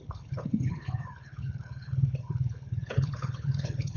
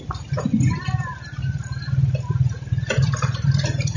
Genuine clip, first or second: second